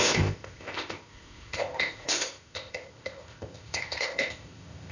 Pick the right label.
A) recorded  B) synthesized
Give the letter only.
B